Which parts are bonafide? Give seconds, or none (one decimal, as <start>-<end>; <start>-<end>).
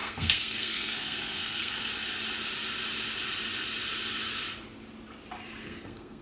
1.9-5.6